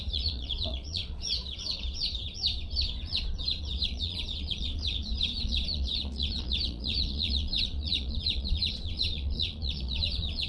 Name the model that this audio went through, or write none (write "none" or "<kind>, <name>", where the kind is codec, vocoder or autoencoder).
vocoder, Vocos